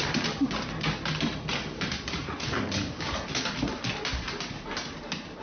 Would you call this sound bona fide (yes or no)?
yes